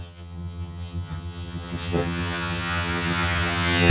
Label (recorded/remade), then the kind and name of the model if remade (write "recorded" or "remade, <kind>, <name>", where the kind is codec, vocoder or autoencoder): remade, vocoder, HiFi-GAN